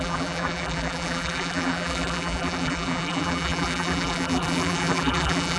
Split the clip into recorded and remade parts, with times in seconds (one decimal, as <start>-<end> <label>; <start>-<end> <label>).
0.0-5.6 remade